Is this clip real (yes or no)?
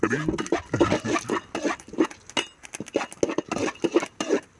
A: yes